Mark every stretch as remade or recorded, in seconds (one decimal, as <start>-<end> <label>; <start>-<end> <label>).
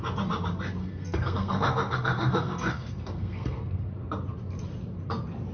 0.0-0.8 recorded; 0.8-3.9 remade; 3.9-5.5 recorded